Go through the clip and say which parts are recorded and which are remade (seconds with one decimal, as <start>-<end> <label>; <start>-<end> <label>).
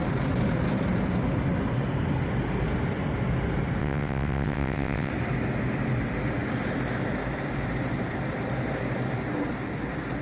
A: 0.0-3.8 recorded; 3.8-5.1 remade; 5.1-10.2 recorded